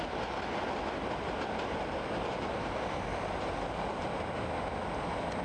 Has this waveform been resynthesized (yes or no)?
no